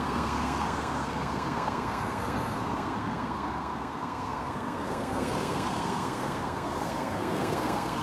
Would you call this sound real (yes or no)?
no